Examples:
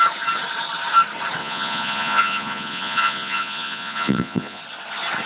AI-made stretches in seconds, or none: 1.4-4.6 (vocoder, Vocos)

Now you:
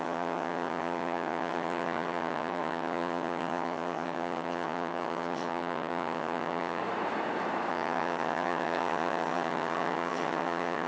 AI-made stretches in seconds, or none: 0.0-6.8 (vocoder, HiFi-GAN); 7.7-10.9

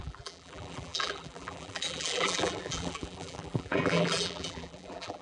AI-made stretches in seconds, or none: 0.0-5.2 (vocoder, BigVGAN v2)